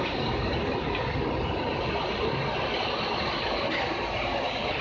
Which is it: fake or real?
real